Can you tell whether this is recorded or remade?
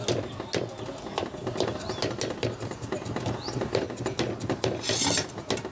recorded